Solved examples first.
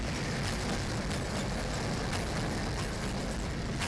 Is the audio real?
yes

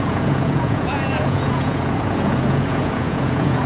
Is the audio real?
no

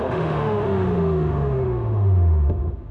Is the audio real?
no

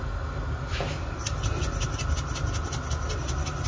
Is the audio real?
yes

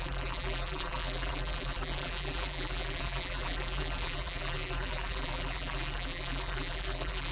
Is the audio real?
no